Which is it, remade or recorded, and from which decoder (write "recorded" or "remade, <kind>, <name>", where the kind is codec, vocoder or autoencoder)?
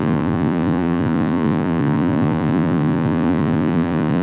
remade, vocoder, Vocos